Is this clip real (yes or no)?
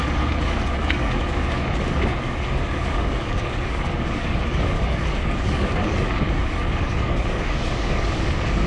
no